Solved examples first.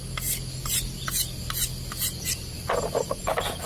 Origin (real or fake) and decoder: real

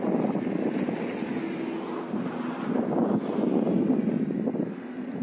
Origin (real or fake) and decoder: real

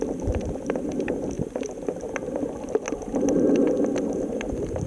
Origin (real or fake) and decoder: real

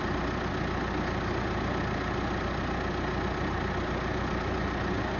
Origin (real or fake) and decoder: real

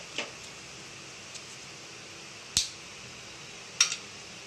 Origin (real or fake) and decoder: real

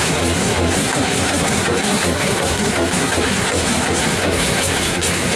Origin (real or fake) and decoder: fake, codec, SNAC